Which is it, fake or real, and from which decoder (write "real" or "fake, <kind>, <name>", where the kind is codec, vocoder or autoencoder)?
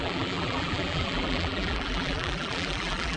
fake, vocoder, BigVGAN v2